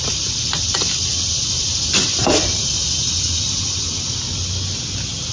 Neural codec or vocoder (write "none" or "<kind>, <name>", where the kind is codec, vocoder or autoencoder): vocoder, BigVGAN v2